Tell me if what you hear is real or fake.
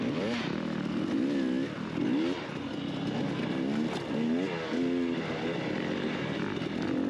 real